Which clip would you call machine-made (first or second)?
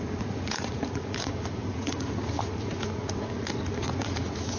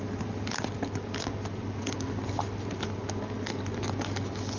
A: first